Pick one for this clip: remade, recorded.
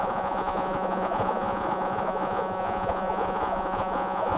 remade